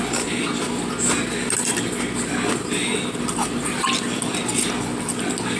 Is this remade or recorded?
recorded